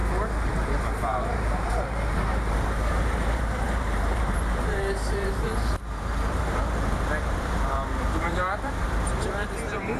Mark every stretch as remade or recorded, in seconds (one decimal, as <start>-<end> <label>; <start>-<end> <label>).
0.0-0.5 recorded; 0.5-10.0 remade